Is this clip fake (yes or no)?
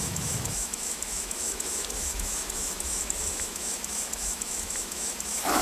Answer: yes